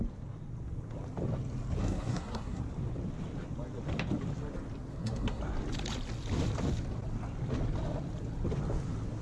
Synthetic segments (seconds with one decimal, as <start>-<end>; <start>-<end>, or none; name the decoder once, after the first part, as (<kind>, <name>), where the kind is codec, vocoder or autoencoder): 1.8-2.6 (codec, SNAC); 4.9-5.4